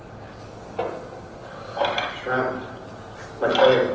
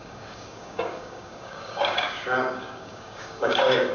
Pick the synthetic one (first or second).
second